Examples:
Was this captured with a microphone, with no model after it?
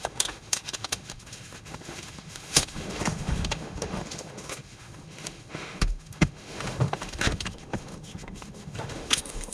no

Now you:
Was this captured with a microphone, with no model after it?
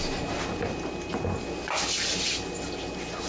yes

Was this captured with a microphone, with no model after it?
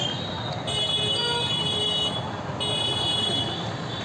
yes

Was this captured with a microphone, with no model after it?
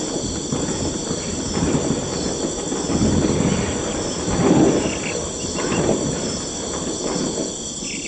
yes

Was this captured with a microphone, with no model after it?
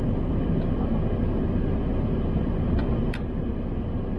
yes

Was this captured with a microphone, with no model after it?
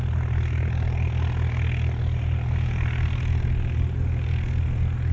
yes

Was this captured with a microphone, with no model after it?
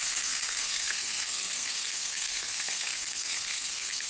no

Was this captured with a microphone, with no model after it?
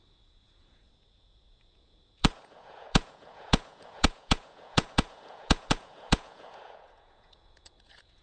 no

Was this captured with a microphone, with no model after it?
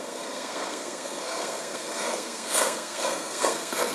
no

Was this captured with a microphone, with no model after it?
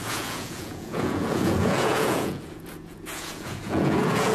no